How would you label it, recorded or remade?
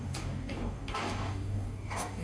remade